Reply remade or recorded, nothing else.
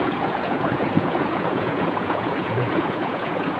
remade